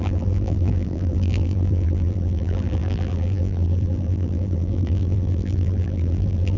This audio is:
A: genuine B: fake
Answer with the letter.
B